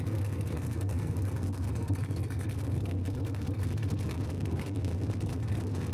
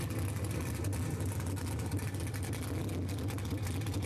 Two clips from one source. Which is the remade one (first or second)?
first